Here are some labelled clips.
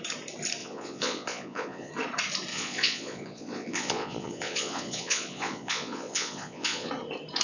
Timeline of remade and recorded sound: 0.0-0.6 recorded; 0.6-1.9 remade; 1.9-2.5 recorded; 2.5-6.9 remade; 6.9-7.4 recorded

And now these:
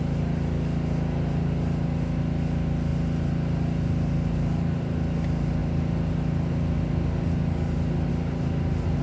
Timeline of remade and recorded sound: 0.0-9.0 recorded

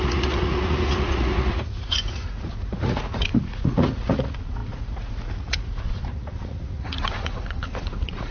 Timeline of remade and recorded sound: 0.0-8.3 remade

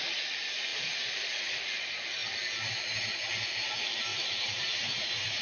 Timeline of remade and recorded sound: 0.0-4.1 recorded; 4.1-5.4 remade